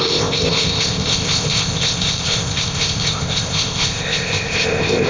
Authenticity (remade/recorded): remade